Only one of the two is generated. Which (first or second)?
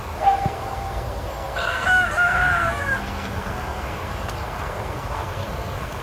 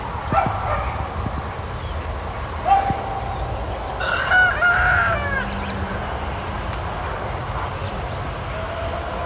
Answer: first